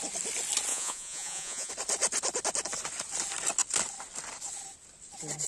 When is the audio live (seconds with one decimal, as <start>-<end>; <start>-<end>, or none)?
0.0-0.7; 1.7-5.5